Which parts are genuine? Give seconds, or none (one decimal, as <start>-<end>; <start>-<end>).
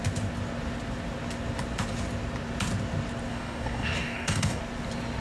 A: 0.0-3.3; 4.6-5.2